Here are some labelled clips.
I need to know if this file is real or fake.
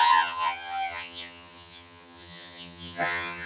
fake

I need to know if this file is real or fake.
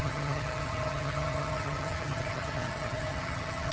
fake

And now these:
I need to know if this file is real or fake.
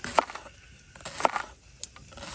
real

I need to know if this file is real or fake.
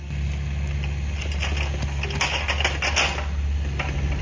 real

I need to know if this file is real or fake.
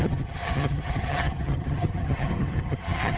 fake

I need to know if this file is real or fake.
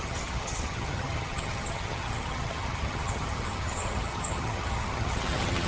fake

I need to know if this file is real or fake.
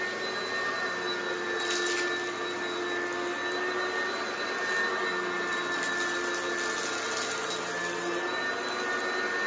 real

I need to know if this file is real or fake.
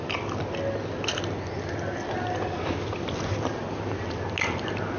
real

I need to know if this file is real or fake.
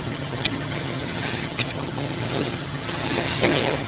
fake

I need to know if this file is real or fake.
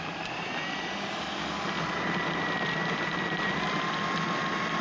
real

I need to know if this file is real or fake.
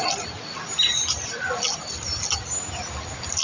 real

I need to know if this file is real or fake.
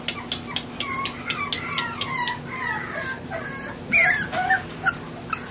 real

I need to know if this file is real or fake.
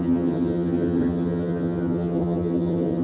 fake